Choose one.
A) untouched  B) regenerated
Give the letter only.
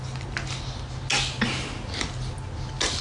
A